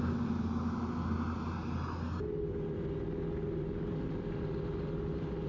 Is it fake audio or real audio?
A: real